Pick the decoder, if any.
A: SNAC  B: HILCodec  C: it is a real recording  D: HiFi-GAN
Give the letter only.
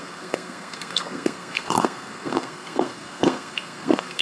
A